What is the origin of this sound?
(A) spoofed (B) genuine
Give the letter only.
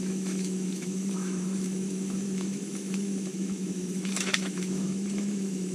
A